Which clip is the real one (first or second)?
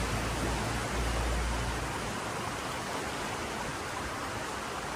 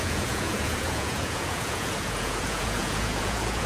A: first